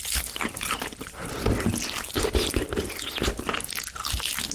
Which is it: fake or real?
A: real